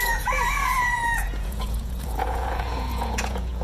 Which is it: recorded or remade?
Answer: remade